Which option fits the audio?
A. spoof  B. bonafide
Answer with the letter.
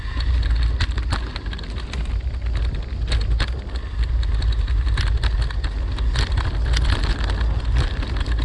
B